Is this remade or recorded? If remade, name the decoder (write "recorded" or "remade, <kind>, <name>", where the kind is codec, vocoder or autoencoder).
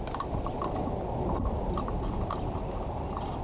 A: recorded